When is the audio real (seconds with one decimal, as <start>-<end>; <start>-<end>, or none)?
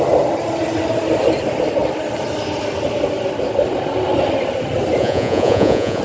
0.0-5.0